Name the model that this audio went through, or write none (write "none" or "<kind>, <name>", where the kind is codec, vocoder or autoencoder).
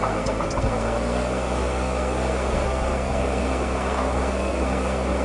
codec, SNAC